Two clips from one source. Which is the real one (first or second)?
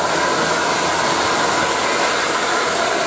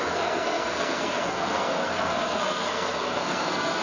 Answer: first